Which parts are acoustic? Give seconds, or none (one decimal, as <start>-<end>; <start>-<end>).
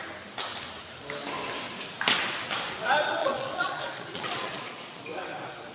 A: 0.0-3.2; 5.0-5.7